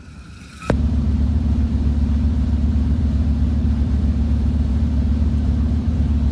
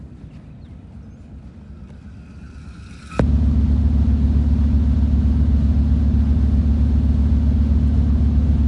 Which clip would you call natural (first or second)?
second